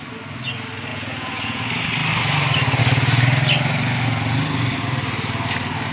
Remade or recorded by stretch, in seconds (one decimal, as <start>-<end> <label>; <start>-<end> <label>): 0.0-0.9 recorded; 0.9-1.6 remade; 1.6-5.9 recorded